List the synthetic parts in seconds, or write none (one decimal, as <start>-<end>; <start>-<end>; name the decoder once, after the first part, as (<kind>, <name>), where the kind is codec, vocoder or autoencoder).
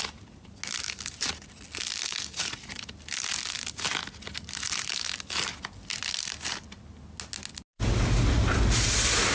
none